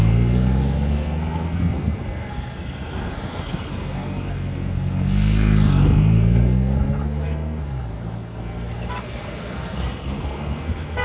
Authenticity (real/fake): fake